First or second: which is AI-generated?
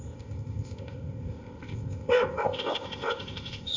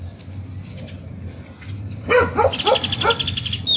first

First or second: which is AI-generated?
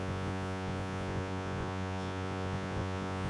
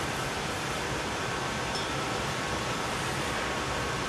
first